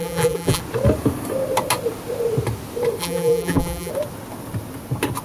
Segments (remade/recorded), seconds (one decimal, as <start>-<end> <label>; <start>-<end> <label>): 0.0-0.6 remade; 0.6-3.0 recorded; 3.0-3.9 remade; 3.9-5.2 recorded